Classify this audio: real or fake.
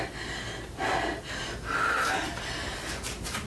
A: real